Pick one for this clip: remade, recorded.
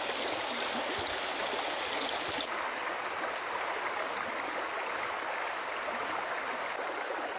recorded